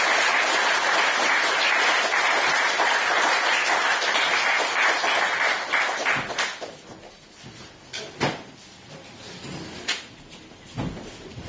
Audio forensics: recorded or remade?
recorded